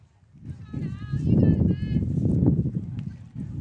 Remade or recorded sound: recorded